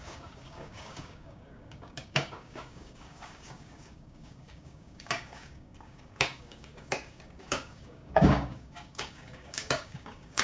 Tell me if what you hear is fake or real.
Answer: fake